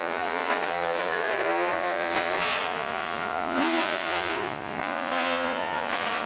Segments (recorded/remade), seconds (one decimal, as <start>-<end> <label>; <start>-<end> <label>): 0.0-6.3 remade